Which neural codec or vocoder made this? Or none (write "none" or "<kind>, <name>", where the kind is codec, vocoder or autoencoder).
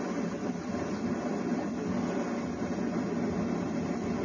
none